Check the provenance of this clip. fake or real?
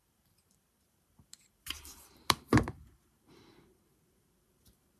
fake